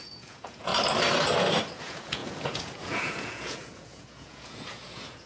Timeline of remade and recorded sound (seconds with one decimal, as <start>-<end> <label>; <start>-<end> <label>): 0.0-0.7 remade; 0.7-1.8 recorded; 1.8-5.3 remade